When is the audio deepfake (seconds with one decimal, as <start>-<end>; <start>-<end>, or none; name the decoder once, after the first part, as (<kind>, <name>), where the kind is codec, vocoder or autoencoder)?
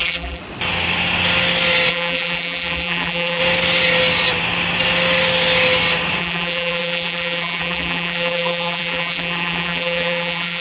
0.0-0.4 (vocoder, BigVGAN v2); 1.9-3.4; 6.2-10.6